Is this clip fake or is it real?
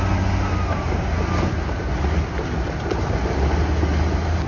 real